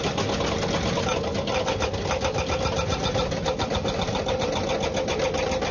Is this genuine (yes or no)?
yes